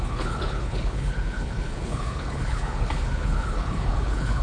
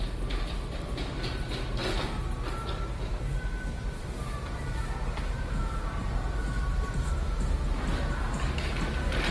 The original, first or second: second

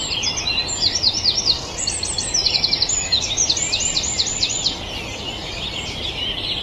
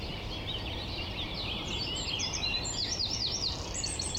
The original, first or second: first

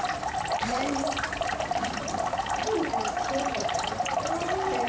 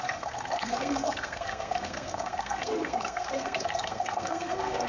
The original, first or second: first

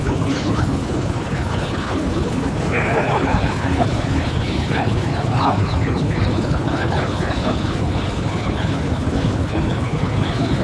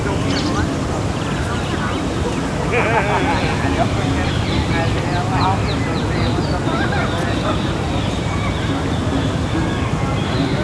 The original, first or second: second